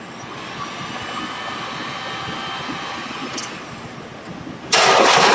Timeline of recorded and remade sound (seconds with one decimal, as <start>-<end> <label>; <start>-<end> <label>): 0.0-5.3 recorded